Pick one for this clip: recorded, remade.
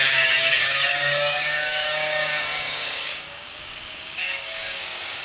remade